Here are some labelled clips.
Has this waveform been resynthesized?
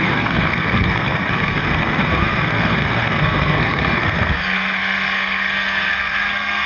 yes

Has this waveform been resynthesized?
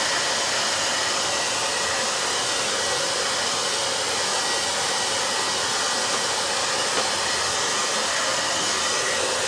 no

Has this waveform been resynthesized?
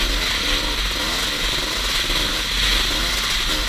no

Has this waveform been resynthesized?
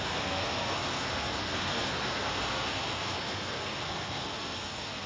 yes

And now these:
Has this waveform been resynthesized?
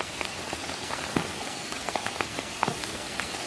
yes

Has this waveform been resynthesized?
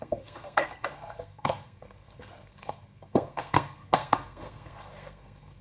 yes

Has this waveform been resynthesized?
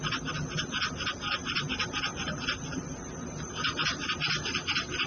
no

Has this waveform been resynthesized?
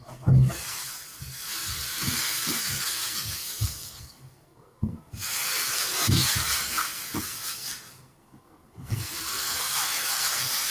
yes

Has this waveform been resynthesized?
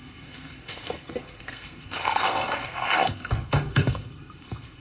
yes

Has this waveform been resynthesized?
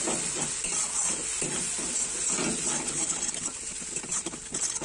no